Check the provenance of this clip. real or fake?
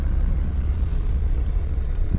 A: fake